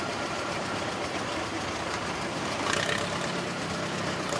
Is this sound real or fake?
fake